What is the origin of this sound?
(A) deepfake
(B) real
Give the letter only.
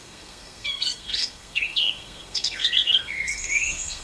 A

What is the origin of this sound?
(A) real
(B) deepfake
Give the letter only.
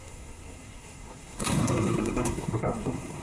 B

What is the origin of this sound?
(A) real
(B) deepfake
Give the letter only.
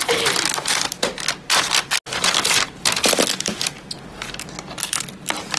A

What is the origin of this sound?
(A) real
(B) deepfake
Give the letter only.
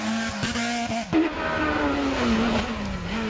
A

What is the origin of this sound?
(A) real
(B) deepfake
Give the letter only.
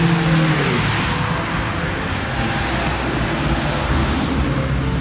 A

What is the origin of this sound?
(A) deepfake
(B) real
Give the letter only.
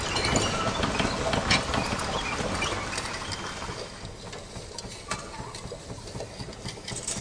B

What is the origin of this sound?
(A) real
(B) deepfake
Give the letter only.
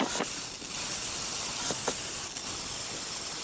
A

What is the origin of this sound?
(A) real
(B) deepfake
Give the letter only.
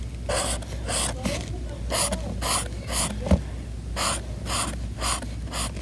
A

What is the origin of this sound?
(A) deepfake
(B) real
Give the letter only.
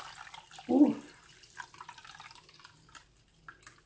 B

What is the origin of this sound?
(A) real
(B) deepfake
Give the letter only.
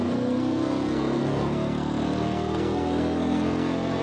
B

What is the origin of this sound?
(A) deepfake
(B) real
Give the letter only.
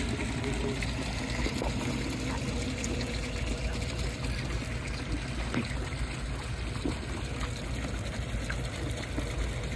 B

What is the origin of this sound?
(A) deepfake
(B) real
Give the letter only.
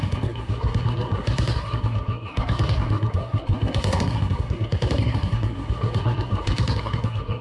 A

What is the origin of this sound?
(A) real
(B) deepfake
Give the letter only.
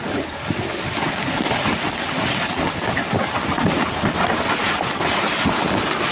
A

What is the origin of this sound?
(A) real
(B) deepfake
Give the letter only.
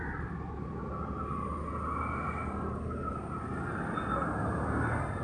A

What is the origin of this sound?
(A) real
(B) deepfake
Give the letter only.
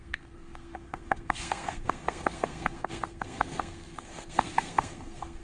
B